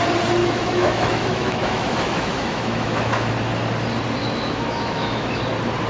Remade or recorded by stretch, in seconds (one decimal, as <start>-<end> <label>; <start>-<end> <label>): 0.0-0.4 recorded; 0.4-3.3 remade; 3.3-4.2 recorded; 4.2-5.4 remade; 5.4-5.9 recorded